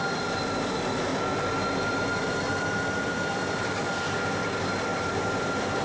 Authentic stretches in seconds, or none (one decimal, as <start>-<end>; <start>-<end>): 0.0-1.1; 3.8-4.9